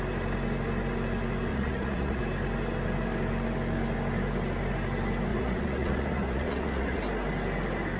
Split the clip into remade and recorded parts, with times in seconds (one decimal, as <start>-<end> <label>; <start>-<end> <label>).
0.0-1.5 recorded; 1.5-2.2 remade; 2.2-5.3 recorded; 5.3-7.0 remade; 7.0-8.0 recorded